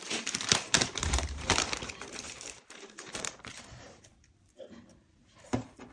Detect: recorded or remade remade